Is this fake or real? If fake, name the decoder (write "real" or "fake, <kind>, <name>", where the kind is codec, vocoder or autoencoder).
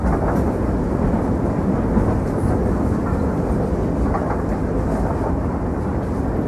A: real